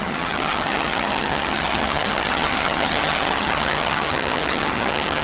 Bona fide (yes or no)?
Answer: no